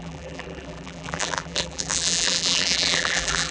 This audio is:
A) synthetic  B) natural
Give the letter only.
A